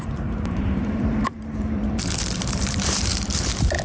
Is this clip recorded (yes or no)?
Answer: no